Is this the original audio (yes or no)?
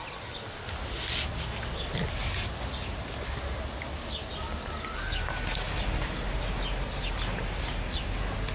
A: yes